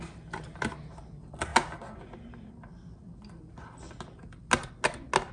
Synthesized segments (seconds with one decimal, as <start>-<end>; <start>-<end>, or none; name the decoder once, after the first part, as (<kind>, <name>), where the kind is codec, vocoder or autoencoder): none